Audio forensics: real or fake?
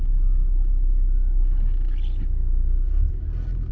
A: real